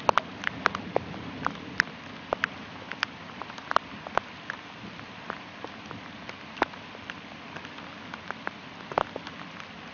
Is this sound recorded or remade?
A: recorded